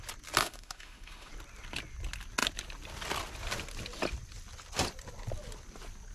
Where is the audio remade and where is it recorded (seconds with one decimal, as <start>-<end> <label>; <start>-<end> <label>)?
0.0-0.4 recorded; 0.4-1.3 remade; 1.3-6.1 recorded